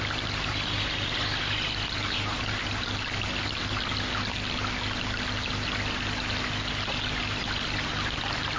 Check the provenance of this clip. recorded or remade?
recorded